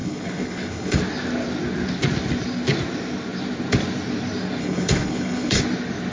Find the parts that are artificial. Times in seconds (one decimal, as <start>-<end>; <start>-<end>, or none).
0.0-1.0; 4.6-5.6